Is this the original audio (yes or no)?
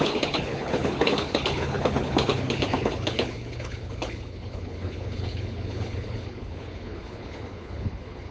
no